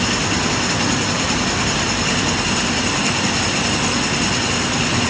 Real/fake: real